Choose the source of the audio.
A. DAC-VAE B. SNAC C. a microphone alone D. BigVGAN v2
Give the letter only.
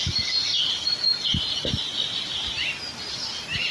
C